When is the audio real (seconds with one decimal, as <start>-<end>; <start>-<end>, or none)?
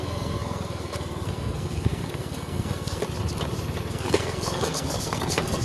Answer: 3.0-3.9